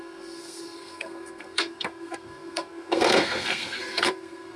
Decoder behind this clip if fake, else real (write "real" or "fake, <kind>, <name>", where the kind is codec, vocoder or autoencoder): fake, codec, SNAC